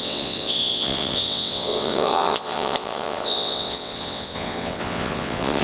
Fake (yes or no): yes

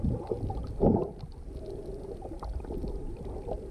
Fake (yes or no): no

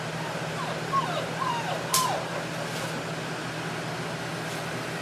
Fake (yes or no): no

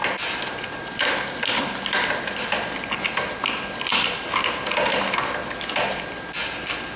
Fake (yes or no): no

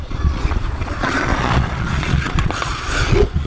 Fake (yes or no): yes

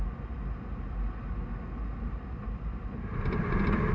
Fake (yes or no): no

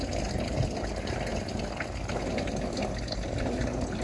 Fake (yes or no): no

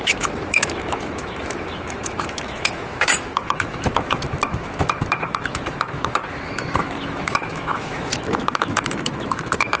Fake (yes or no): yes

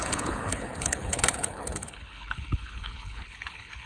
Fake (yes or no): yes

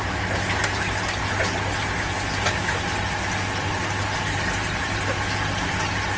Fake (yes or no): no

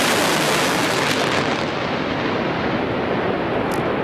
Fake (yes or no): no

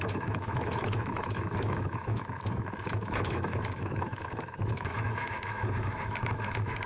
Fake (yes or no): yes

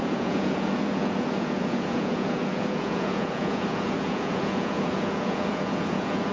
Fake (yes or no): yes